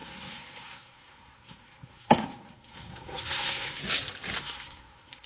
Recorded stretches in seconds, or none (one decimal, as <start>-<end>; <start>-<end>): 3.8-4.4